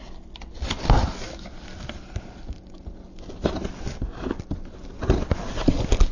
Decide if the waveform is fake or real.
real